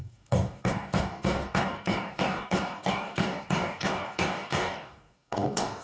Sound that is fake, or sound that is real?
fake